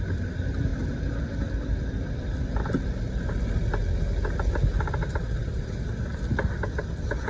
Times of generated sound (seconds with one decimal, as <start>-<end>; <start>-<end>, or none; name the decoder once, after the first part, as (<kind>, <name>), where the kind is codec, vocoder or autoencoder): 0.7-3.3 (vocoder, BigVGAN v2)